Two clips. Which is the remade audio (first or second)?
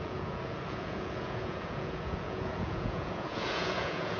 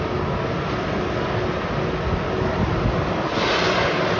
first